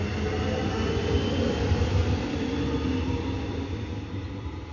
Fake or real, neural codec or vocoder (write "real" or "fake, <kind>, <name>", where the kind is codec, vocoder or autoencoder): real